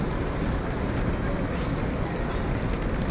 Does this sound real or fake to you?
real